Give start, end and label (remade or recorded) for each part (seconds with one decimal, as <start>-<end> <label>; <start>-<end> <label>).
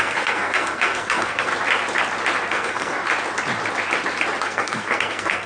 0.0-1.5 remade; 1.5-2.5 recorded; 2.5-3.0 remade; 3.0-4.4 recorded; 4.4-5.5 remade